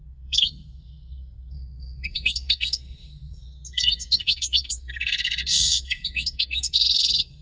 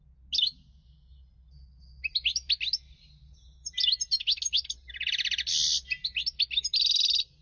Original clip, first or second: second